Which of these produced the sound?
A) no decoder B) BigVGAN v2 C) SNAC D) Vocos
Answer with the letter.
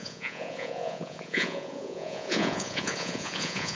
D